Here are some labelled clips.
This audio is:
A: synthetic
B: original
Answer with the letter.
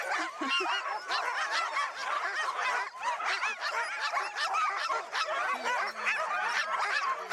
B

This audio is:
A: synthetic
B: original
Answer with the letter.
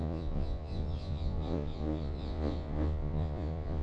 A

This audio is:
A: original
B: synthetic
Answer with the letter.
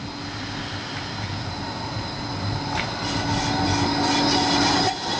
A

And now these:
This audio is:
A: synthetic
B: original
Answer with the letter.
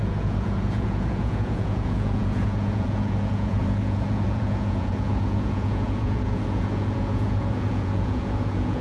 A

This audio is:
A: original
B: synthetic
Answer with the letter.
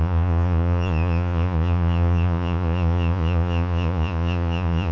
B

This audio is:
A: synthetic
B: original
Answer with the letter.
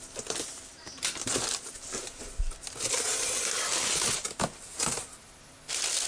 B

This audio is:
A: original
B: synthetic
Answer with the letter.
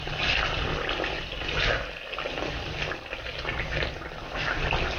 A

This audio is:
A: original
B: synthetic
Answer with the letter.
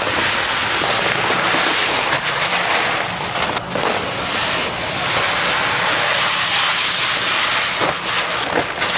A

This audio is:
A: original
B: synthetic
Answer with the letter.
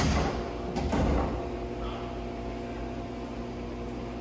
A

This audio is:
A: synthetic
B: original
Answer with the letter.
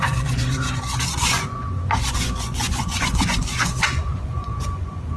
A